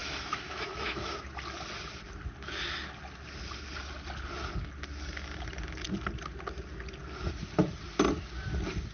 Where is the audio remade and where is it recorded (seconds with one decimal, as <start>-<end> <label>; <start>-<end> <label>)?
0.0-1.2 remade; 1.2-8.9 recorded